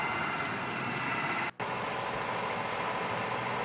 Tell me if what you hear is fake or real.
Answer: real